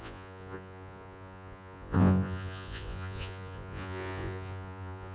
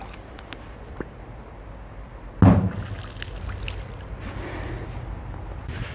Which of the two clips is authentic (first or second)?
second